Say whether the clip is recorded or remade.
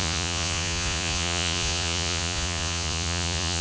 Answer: remade